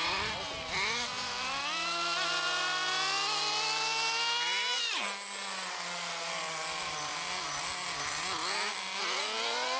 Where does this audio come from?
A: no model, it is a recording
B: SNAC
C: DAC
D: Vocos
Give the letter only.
A